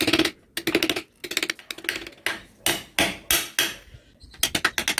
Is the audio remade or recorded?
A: recorded